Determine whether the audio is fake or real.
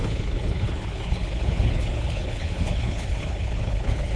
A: fake